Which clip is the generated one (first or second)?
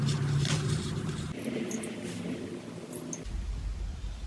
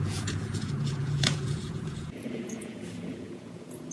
second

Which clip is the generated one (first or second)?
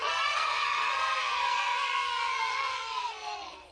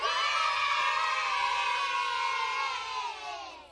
first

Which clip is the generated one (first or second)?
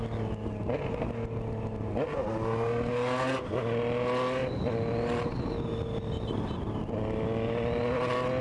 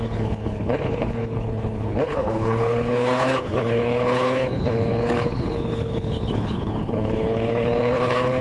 second